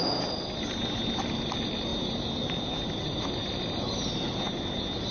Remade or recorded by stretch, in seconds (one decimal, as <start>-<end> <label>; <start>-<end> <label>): 0.0-5.1 recorded